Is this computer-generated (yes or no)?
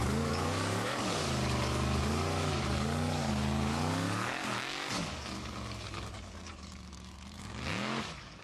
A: yes